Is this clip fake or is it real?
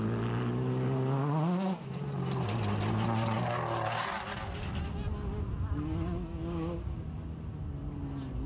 real